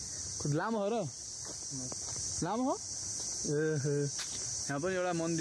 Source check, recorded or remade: recorded